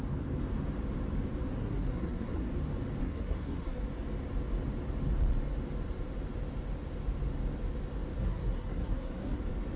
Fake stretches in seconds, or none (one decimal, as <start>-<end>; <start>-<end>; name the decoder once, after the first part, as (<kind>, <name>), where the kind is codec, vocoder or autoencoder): 1.5-2.5 (codec, SNAC); 3.0-3.8; 8.2-9.4